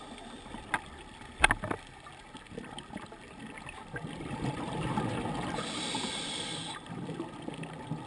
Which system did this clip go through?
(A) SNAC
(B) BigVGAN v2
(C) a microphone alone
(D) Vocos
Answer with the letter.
C